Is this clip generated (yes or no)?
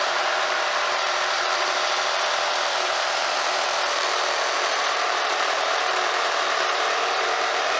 yes